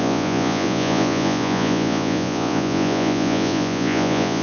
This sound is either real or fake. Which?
fake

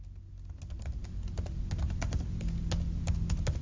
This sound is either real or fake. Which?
real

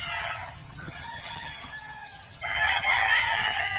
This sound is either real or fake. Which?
fake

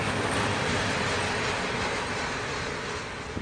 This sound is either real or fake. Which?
real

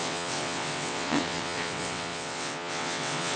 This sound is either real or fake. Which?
fake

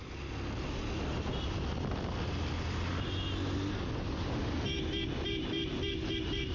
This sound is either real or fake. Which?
real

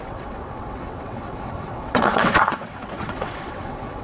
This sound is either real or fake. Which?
fake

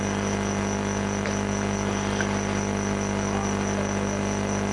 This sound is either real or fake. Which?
real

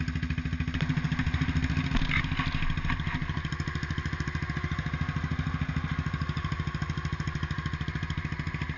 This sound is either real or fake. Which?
real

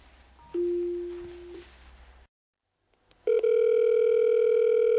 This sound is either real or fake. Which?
real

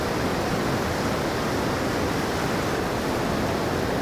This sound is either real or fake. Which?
real